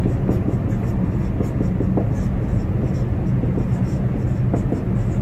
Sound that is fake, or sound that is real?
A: real